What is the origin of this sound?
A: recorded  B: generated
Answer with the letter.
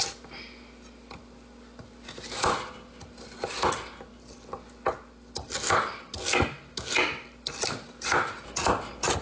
A